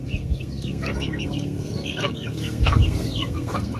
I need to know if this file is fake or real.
fake